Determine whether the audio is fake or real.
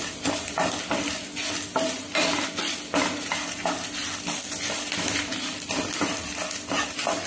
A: real